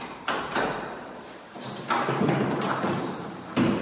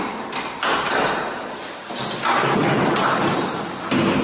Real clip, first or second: second